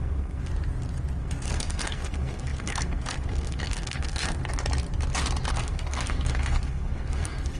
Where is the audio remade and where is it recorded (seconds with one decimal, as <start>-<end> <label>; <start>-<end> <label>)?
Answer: 0.0-0.5 remade; 0.5-1.2 recorded; 1.2-4.4 remade; 4.4-5.5 recorded; 5.5-7.6 remade